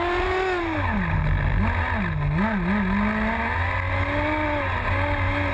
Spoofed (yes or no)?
no